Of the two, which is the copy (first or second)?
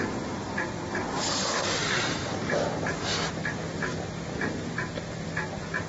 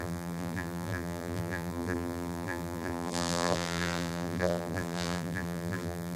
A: second